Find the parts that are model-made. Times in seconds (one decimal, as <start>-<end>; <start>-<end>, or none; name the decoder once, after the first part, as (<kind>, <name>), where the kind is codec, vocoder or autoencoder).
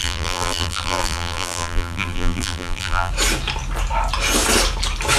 0.0-3.1 (vocoder, BigVGAN v2)